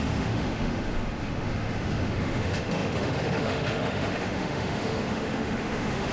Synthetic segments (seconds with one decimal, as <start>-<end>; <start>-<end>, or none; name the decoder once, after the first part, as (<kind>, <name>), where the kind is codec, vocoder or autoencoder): 0.0-6.1 (autoencoder, DAC-VAE)

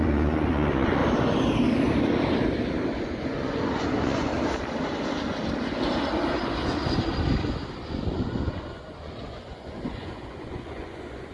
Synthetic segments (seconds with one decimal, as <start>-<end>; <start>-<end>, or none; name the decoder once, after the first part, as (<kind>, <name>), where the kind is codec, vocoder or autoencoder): 0.0-1.0 (vocoder, Vocos); 3.0-4.3; 8.1-11.3

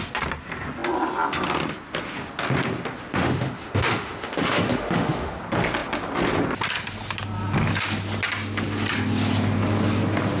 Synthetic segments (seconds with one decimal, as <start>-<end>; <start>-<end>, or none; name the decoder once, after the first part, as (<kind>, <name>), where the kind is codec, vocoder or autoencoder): 3.1-5.3 (autoencoder, DAC-VAE)

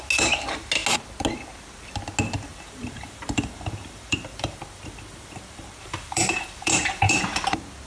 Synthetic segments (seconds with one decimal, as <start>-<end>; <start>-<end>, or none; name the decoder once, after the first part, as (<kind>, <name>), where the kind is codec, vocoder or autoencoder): 2.5-7.2 (vocoder, BigVGAN v2)

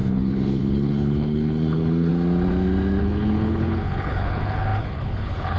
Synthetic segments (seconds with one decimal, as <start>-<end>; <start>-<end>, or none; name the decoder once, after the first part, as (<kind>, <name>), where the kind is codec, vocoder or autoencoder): 0.0-2.1 (codec, HILCodec); 3.0-5.6